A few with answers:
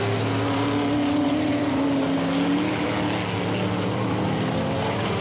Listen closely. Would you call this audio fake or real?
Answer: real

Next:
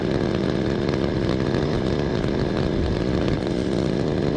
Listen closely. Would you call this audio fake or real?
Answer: real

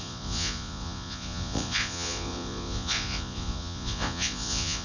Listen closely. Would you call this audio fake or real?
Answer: fake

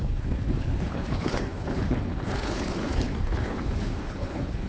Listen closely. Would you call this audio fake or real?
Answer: fake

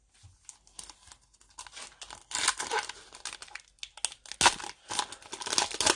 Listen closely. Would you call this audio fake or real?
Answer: real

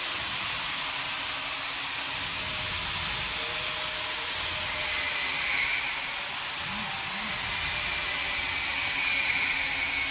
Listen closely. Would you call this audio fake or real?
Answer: real